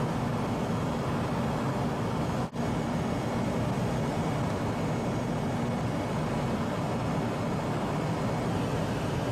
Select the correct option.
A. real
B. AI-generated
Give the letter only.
A